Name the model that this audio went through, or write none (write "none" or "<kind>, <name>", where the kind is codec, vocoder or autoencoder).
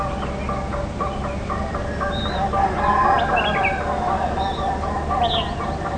none